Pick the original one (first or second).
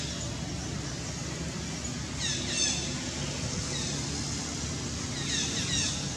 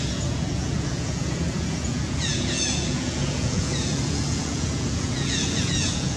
first